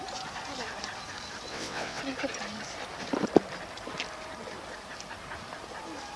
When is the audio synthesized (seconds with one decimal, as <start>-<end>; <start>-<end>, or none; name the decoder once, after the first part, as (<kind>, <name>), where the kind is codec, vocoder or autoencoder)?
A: 1.5-2.0 (vocoder, WaveNeXt)